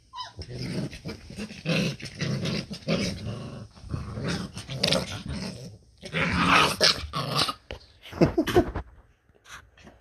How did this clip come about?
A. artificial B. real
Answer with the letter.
B